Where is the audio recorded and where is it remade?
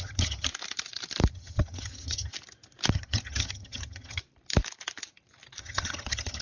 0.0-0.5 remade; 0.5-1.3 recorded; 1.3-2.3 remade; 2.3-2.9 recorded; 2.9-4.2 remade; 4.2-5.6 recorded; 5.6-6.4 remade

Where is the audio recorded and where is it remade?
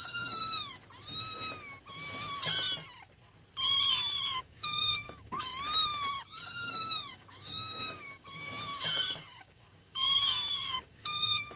0.0-0.4 remade; 0.4-4.4 recorded; 4.4-5.5 remade; 5.5-6.2 recorded; 6.2-11.6 remade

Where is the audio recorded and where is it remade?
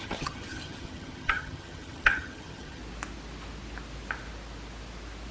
0.0-2.8 remade; 2.8-5.3 recorded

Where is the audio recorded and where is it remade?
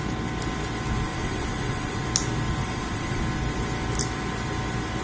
0.0-1.1 recorded; 1.1-2.0 remade; 2.0-2.6 recorded; 2.6-3.2 remade; 3.2-5.0 recorded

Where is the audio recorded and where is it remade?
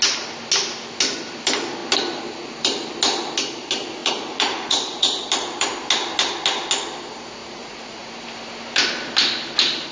0.0-4.0 recorded; 4.0-5.2 remade; 5.2-7.4 recorded; 7.4-8.1 remade; 8.1-9.9 recorded